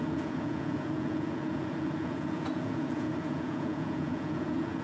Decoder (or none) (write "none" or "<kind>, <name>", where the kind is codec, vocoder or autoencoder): vocoder, Vocos